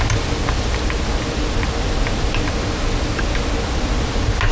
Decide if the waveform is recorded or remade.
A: recorded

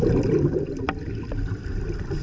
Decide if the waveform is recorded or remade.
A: recorded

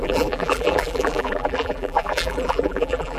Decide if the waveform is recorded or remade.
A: remade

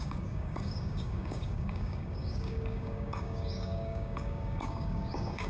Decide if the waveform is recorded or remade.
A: remade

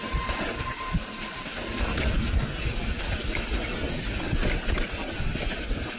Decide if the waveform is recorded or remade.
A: recorded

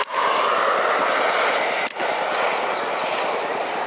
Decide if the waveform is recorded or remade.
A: recorded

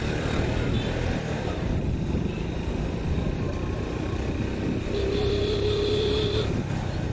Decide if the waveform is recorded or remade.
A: remade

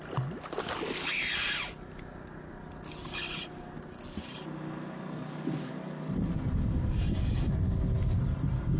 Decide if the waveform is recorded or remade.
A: recorded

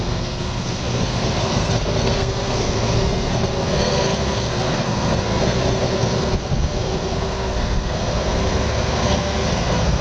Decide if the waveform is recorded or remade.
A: remade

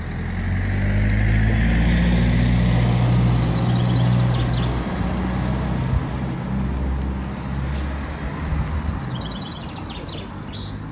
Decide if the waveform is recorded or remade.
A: recorded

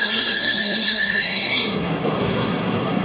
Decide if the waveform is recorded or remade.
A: remade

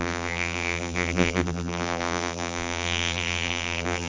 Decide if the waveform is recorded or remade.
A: remade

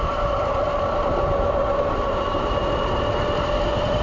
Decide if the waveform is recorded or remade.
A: remade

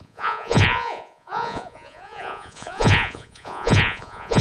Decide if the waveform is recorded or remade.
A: remade